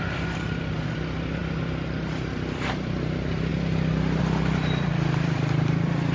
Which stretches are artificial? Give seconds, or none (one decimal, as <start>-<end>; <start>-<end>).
0.0-1.4; 2.3-3.5; 4.2-6.1